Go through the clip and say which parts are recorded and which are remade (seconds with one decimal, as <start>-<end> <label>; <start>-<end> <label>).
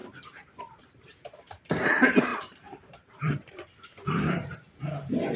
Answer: 0.0-0.6 recorded; 0.6-5.4 remade